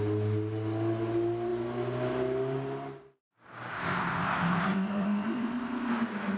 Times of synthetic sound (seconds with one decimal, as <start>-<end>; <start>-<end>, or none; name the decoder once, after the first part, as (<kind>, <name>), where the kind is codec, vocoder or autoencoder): 3.7-5.9 (codec, ZipCodec)